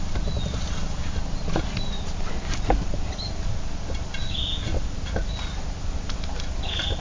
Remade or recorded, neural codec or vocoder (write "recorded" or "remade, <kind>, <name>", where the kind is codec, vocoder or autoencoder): recorded